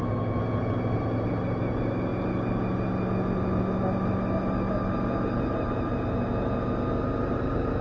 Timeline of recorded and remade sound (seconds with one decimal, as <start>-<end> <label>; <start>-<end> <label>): 0.0-7.8 recorded